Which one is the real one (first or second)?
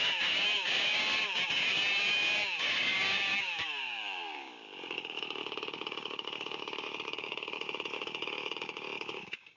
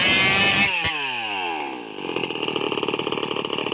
second